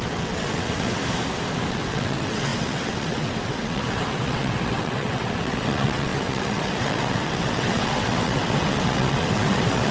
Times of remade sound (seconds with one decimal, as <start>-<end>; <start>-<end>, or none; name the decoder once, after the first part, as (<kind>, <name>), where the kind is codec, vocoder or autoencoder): 0.0-1.0 (vocoder, WaveNeXt); 1.7-9.9